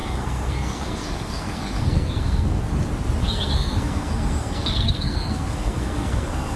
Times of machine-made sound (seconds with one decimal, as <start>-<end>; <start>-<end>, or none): 0.0-2.6; 3.2-6.6